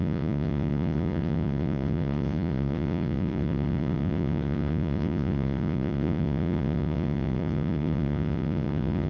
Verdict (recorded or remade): remade